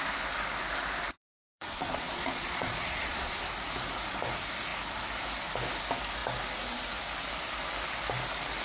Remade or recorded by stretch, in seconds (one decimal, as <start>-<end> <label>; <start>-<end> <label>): 0.0-1.2 recorded; 1.2-3.4 remade; 3.4-8.6 recorded